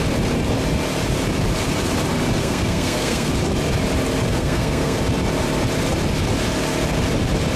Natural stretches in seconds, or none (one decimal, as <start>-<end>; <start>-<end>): 0.0-2.4; 3.3-4.3; 5.0-7.6